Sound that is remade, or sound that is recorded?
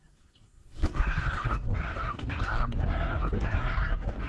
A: remade